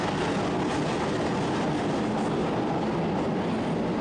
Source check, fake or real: real